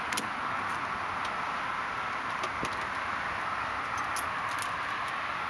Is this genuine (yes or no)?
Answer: yes